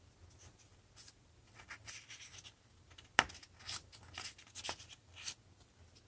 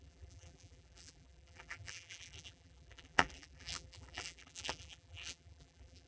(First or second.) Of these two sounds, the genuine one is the first